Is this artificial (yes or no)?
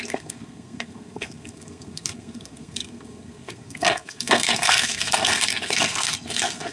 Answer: yes